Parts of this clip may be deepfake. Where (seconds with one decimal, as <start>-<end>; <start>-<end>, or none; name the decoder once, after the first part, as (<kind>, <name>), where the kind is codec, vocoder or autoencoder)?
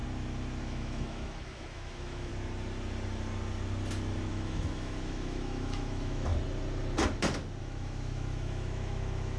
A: 0.6-2.3 (autoencoder, DAC-VAE); 4.3-6.3; 7.6-9.4